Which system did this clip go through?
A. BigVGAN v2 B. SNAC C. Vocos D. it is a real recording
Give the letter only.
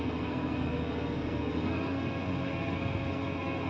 B